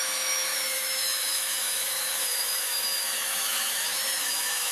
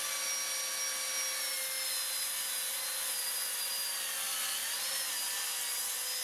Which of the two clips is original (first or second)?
second